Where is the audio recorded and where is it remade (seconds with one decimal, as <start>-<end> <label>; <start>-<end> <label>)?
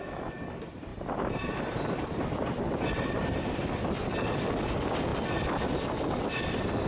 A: 0.0-0.9 recorded; 0.9-3.4 remade; 3.4-6.9 recorded